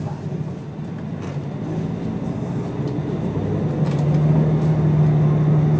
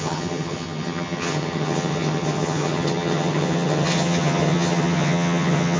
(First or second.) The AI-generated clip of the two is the second